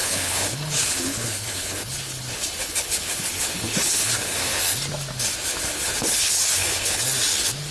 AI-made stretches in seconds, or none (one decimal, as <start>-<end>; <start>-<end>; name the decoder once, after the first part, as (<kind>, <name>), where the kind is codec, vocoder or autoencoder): 0.0-4.6 (codec, HILCodec); 5.6-7.0